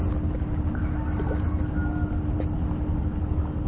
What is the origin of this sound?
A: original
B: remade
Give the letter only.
A